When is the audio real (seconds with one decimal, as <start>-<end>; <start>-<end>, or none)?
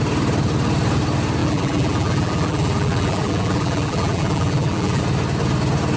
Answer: 0.0-1.4; 5.0-6.0